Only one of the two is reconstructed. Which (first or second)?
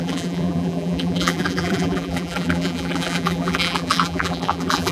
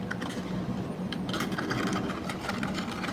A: first